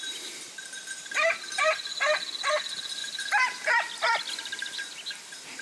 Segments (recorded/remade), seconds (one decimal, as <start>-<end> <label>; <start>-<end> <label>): 0.0-3.0 recorded; 3.0-5.6 remade